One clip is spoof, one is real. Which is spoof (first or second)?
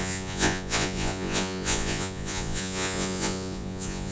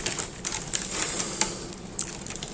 first